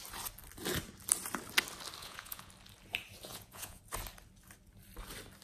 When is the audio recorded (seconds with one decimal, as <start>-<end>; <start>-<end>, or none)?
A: 0.0-2.0; 2.5-3.3; 3.8-5.4